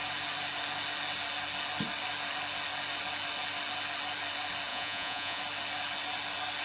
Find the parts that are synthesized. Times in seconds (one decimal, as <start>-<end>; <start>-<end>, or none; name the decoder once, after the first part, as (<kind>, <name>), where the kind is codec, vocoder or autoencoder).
4.7-5.4 (vocoder, Vocos)